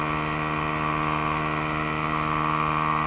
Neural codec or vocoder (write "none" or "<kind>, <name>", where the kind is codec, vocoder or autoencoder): none